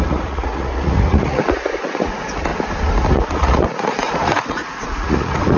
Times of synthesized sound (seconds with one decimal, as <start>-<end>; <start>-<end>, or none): 0.0-2.5; 3.1-5.6